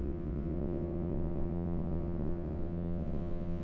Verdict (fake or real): fake